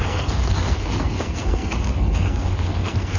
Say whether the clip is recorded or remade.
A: remade